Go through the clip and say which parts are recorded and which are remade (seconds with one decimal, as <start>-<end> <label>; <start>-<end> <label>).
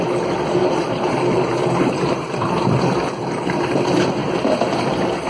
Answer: 0.0-0.6 recorded; 0.6-3.8 remade; 3.8-4.2 recorded; 4.2-4.8 remade; 4.8-5.3 recorded